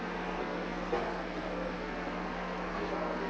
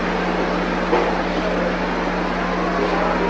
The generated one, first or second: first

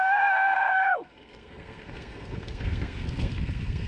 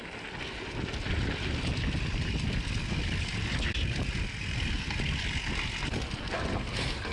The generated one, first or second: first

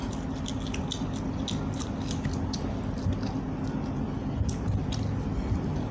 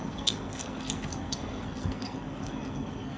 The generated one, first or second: second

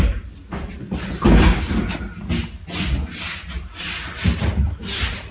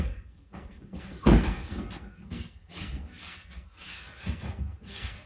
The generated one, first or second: second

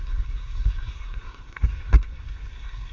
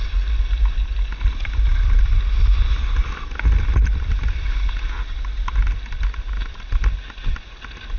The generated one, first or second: first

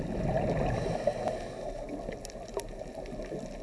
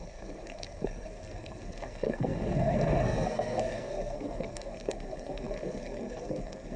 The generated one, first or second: second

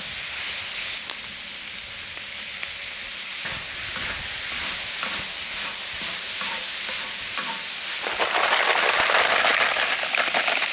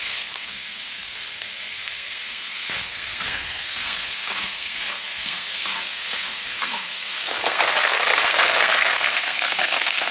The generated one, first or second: second